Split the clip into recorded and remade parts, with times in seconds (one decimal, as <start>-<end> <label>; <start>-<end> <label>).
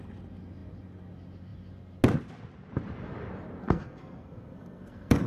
0.0-3.6 recorded; 3.6-5.3 remade